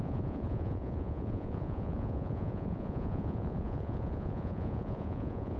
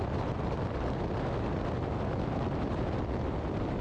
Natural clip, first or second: second